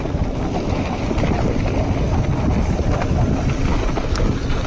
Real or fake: real